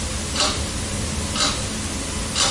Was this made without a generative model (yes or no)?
yes